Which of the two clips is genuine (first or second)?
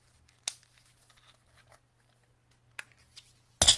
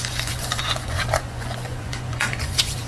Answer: first